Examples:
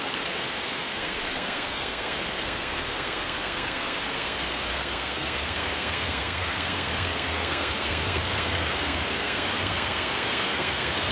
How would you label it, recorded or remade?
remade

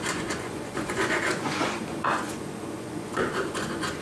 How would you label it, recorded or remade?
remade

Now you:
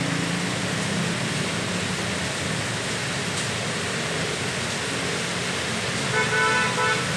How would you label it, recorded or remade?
recorded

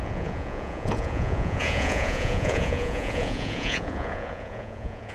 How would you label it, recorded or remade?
remade